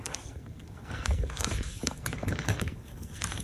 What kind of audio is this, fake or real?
fake